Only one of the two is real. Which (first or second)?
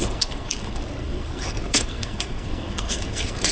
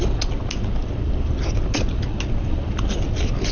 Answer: second